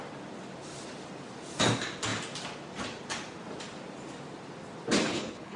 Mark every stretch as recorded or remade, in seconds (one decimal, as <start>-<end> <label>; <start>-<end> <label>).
0.0-5.1 recorded; 5.1-5.6 remade